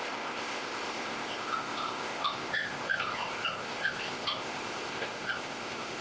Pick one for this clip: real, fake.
fake